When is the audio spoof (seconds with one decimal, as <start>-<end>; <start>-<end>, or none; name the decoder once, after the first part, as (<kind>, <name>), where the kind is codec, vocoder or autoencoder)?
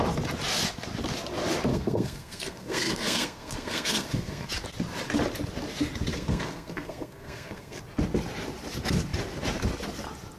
1.7-4.5 (codec, SNAC); 6.1-7.8